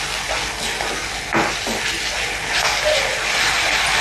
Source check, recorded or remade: recorded